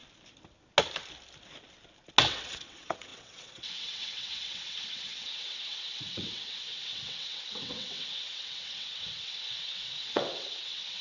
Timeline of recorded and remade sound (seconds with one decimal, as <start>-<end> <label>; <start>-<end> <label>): 0.0-2.2 recorded; 2.2-11.0 remade